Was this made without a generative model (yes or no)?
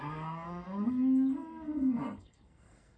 no